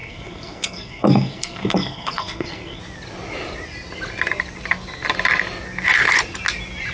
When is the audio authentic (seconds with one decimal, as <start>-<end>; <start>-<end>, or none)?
2.8-6.9